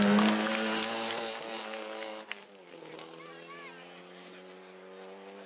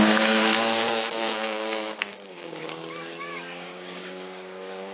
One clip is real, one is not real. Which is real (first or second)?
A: first